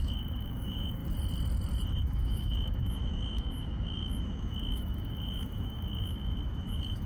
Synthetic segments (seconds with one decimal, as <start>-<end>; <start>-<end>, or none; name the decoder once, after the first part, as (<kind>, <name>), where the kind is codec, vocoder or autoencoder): 0.0-1.0 (autoencoder, DAC-VAE); 2.0-7.1